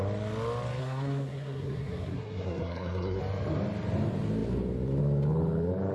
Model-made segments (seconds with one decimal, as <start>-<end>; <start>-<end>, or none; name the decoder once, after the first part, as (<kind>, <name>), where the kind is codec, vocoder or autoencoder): 0.8-3.2 (codec, SNAC)